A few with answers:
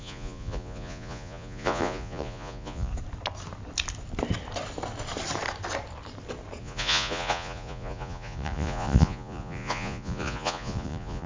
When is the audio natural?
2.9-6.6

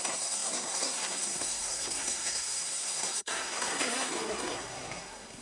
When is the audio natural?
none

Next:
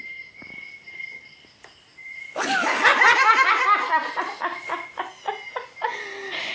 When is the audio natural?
0.0-6.5

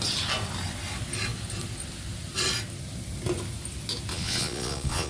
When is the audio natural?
0.0-4.1

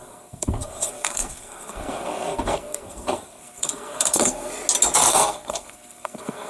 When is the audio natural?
4.5-5.1

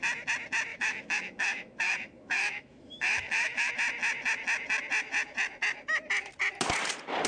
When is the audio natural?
0.0-0.7; 3.7-7.3

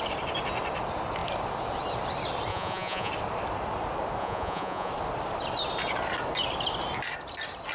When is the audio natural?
0.0-2.5; 3.1-4.2; 4.9-7.7